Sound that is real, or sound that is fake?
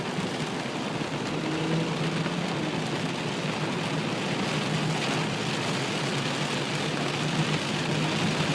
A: real